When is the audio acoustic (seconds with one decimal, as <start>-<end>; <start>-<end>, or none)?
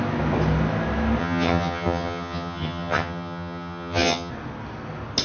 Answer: 0.0-1.2; 4.3-5.2